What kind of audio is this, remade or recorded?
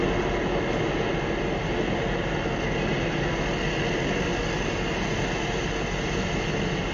recorded